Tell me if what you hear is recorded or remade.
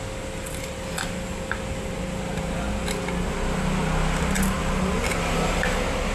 recorded